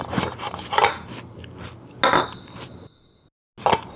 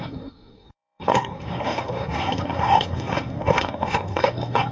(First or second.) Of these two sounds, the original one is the first